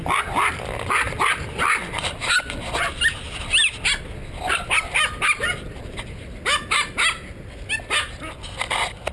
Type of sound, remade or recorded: recorded